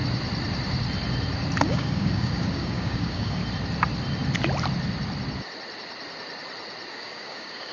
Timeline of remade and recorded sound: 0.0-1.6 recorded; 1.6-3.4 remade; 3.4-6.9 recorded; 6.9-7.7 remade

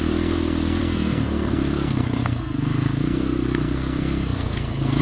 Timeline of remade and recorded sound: 0.0-5.0 remade